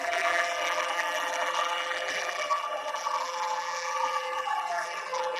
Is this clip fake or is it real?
fake